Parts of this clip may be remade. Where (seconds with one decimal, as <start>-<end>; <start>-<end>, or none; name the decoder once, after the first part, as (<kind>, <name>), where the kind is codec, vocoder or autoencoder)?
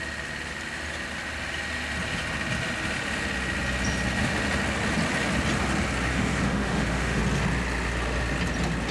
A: 6.1-7.2 (autoencoder, DAC-VAE)